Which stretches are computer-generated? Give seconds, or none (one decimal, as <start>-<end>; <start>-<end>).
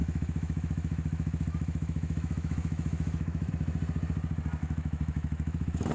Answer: 0.0-3.5; 4.6-5.9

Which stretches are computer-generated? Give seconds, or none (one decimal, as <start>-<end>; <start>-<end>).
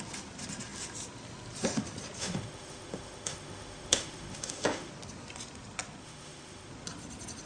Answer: 2.2-4.9; 6.0-6.7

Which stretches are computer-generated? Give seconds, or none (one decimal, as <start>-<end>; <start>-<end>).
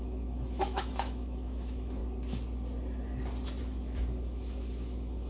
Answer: 0.0-2.0; 3.6-5.3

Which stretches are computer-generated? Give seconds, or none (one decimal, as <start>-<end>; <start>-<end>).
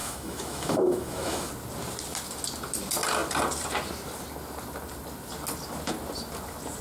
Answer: 0.0-1.5